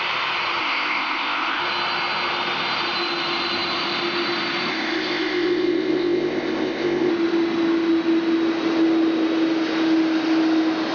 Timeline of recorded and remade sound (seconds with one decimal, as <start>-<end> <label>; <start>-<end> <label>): 0.0-0.6 recorded; 0.6-1.6 remade; 1.6-4.7 recorded; 4.7-7.1 remade; 7.1-10.9 recorded